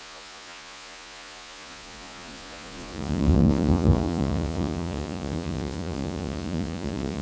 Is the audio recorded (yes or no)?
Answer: no